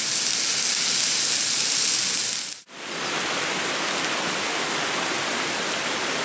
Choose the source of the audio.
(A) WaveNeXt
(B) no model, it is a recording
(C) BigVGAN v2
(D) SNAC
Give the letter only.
B